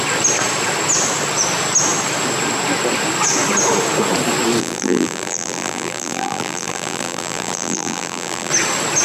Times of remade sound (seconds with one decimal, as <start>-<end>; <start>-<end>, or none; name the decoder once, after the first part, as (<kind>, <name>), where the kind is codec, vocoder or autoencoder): 4.6-8.5 (vocoder, BigVGAN v2)